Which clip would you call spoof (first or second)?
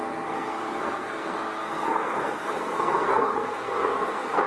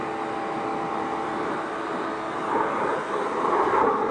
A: first